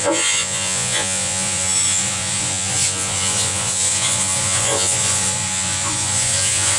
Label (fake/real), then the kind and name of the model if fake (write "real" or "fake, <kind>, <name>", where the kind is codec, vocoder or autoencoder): fake, vocoder, Vocos